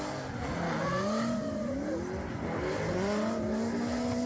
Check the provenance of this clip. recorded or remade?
recorded